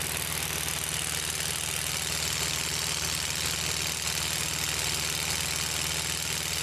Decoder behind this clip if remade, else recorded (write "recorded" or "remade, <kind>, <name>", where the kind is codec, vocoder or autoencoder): recorded